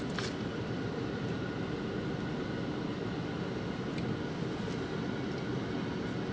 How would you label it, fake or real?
real